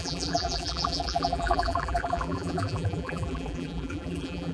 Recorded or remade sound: remade